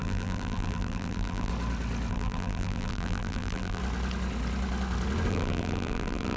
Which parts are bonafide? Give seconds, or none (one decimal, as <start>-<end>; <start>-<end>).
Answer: 1.5-2.1; 3.8-5.3